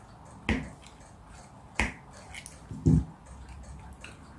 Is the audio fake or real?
real